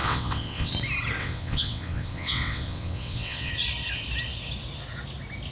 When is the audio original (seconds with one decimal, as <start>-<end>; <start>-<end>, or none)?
0.7-1.2; 3.5-5.5